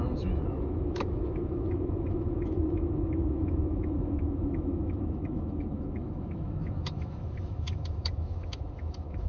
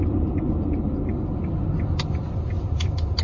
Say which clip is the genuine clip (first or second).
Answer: second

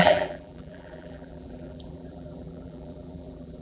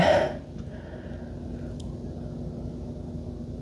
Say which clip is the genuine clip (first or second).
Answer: second